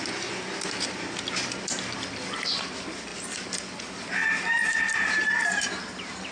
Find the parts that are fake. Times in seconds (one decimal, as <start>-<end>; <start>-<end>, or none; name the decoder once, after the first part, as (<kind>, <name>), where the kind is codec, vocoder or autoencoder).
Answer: 4.2-6.3 (vocoder, BigVGAN v2)